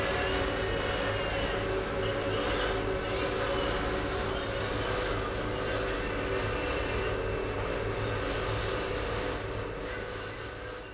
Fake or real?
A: real